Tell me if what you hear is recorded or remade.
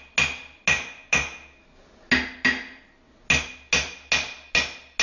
recorded